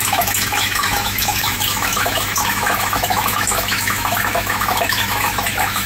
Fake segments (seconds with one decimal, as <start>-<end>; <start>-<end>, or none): 0.0-5.9

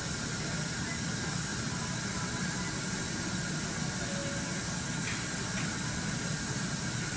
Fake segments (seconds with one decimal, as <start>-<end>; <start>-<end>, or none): none

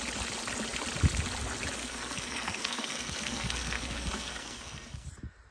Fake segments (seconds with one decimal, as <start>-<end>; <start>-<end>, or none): 1.8-5.1

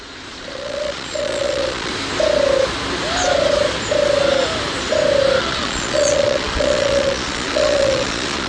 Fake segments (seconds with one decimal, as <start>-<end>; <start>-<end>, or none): 0.0-1.9; 5.4-8.5

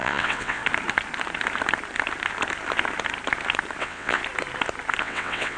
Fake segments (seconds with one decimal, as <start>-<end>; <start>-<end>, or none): 0.0-0.6; 3.8-4.2; 5.0-5.6

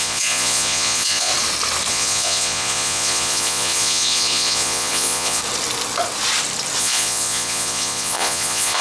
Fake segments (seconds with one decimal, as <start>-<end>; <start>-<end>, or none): 0.0-1.3; 1.9-5.4; 6.8-8.8

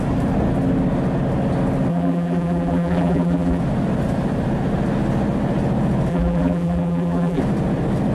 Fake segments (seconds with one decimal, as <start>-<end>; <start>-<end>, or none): 1.9-3.6; 6.1-7.4

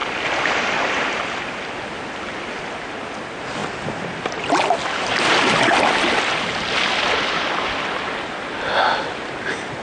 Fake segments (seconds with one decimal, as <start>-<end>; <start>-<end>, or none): none